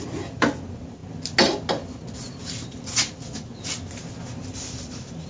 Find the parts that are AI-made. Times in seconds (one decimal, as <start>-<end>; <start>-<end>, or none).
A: 0.0-1.0; 4.2-5.3